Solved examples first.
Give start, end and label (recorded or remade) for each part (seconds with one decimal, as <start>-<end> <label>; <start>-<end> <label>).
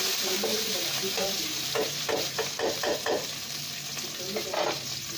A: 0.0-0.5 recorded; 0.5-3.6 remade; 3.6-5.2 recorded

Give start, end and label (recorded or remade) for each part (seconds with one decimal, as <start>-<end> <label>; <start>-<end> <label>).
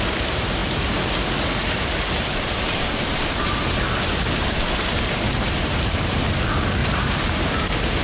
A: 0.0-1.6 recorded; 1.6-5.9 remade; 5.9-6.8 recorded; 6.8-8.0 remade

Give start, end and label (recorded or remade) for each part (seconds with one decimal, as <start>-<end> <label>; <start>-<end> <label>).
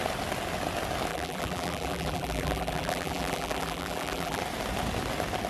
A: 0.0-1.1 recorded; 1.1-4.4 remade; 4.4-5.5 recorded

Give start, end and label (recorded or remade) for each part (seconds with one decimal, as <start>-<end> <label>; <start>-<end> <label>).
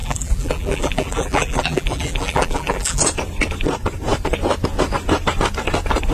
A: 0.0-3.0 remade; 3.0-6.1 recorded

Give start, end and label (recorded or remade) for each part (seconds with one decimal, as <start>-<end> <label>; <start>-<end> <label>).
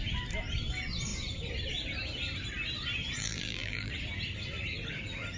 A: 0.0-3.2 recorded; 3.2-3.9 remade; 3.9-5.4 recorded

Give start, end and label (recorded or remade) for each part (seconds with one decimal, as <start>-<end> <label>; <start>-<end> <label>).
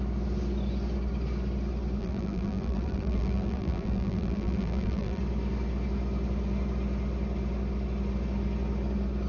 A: 0.0-2.0 recorded; 2.0-5.2 remade; 5.2-9.3 recorded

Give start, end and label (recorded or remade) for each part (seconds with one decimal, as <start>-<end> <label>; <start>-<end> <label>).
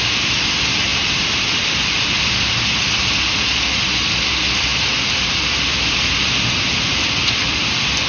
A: 0.0-0.9 recorded; 0.9-3.3 remade; 3.3-4.7 recorded; 4.7-7.6 remade; 7.6-8.1 recorded